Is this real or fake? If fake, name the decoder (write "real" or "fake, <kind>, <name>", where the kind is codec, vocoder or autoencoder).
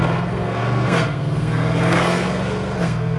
fake, codec, SNAC